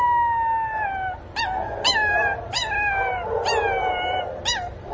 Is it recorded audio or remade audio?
recorded